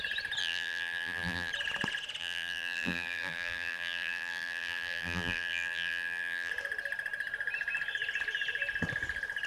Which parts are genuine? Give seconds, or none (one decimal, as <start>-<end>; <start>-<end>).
0.0-0.4; 1.5-2.2; 6.5-9.5

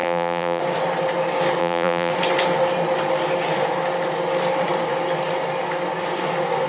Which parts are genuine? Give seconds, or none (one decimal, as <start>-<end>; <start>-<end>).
0.6-1.6; 2.1-6.7

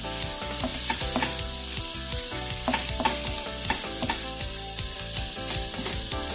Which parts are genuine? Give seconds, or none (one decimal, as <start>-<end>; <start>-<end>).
0.0-0.7; 1.8-2.8

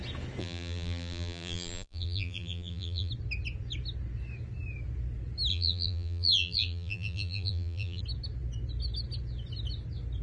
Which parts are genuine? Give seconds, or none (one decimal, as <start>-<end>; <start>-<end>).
0.0-0.4; 3.1-5.5; 8.0-10.2

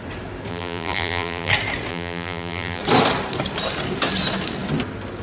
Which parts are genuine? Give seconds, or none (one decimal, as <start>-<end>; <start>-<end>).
0.0-0.5; 1.5-1.9; 2.8-5.2

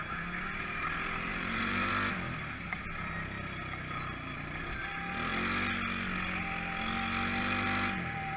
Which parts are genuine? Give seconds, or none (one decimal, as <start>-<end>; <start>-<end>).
0.0-1.3; 1.9-8.4